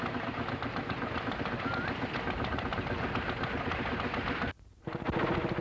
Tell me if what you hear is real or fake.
real